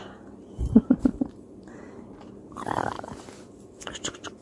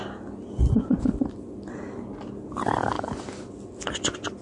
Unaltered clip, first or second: second